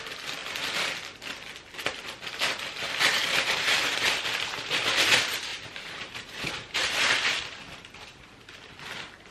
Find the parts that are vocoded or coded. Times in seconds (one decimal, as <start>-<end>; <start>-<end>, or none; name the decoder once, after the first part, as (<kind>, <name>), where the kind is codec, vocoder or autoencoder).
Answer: 3.1-4.2 (vocoder, BigVGAN v2); 5.5-7.0